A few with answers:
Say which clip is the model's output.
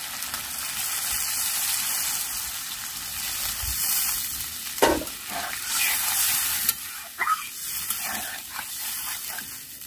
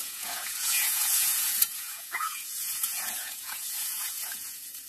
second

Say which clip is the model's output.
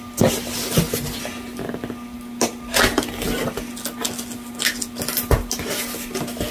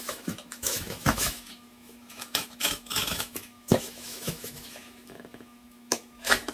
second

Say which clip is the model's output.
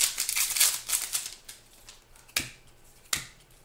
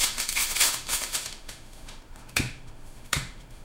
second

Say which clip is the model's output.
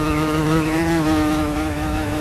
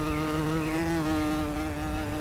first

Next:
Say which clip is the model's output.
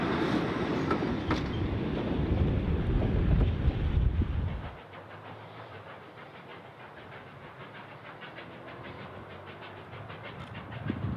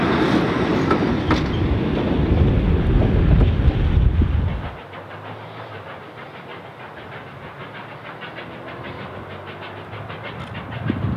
first